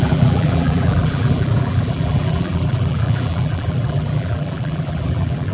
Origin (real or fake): fake